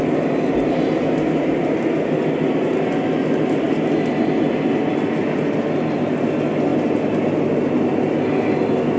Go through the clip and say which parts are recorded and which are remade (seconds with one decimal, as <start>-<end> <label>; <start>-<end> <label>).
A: 0.0-9.0 recorded